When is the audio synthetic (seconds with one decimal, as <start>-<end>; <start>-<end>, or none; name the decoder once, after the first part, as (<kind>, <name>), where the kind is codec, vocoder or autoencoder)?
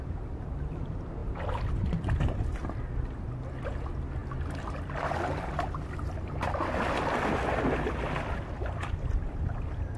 none